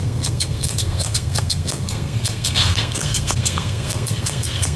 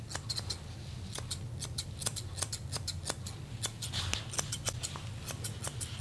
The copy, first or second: first